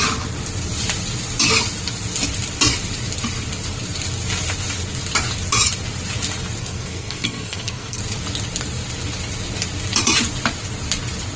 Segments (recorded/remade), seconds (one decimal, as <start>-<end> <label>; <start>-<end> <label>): 0.0-6.6 recorded; 6.6-8.0 remade; 8.0-11.4 recorded